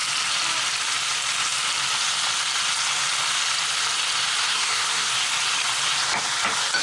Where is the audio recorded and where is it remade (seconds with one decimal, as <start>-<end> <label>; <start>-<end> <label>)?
0.0-4.5 recorded; 4.5-5.1 remade; 5.1-6.8 recorded